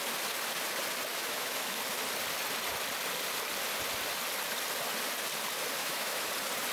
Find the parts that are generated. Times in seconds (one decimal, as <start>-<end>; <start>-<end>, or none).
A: 1.1-1.8; 5.8-6.3